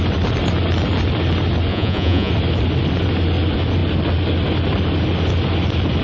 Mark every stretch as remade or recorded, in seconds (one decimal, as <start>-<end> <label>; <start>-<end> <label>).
0.0-1.7 recorded; 1.7-2.3 remade; 2.3-6.0 recorded